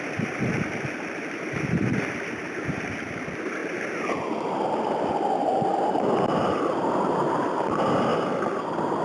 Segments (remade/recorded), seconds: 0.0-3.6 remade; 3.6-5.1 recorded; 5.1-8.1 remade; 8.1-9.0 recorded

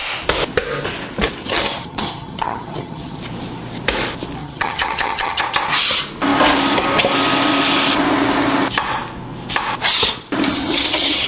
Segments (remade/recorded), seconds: 0.0-1.4 recorded; 1.4-3.2 remade; 3.2-4.4 recorded; 4.4-5.4 remade; 5.4-10.5 recorded; 10.5-11.3 remade